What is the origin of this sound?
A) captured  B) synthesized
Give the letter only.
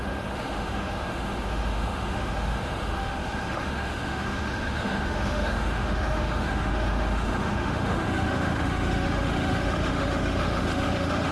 B